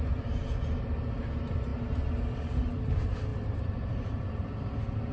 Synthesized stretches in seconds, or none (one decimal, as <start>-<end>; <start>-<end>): 3.3-4.5